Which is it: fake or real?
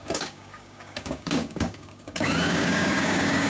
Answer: fake